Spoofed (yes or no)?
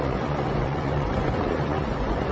yes